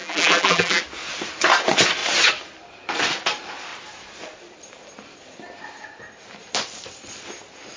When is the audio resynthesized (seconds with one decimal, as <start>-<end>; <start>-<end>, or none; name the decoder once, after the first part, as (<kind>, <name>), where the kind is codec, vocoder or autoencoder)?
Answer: 0.0-0.8 (vocoder, BigVGAN v2)